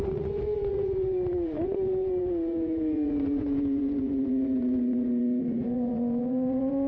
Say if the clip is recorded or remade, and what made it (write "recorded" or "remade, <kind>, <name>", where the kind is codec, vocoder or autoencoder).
remade, vocoder, Vocos